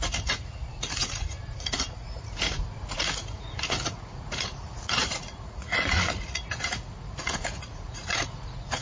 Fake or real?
fake